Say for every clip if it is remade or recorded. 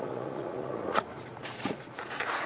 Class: remade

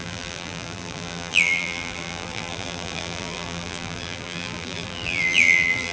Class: remade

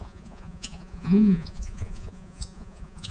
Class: remade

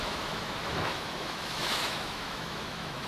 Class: remade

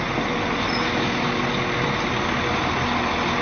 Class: recorded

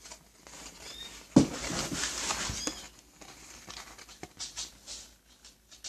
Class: recorded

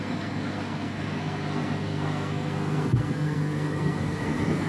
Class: remade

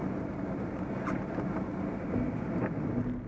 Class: recorded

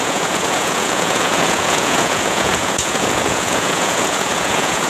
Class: remade